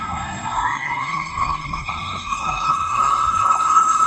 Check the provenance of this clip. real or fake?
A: fake